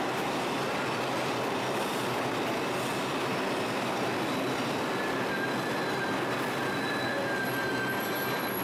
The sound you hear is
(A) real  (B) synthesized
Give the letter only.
A